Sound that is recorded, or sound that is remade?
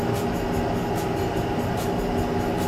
recorded